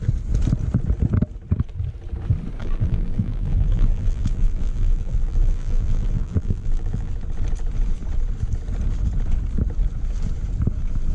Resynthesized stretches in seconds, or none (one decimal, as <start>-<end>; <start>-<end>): 2.6-7.1

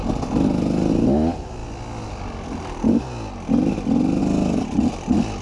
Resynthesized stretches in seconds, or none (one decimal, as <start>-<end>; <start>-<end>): none

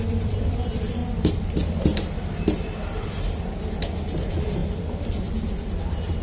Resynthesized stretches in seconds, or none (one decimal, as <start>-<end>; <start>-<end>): 0.0-1.0; 1.8-6.2

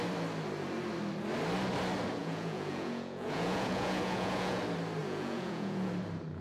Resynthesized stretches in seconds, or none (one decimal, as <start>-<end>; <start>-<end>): 2.2-4.6; 5.0-5.9

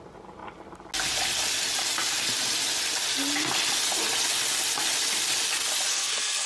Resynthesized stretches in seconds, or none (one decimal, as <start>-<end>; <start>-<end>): 5.9-6.5

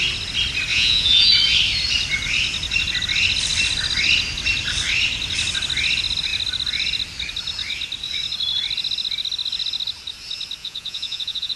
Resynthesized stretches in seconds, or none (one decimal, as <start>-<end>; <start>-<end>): 0.7-1.3; 10.6-11.6

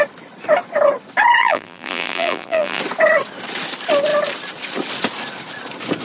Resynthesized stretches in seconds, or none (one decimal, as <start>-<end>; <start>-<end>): 1.4-2.8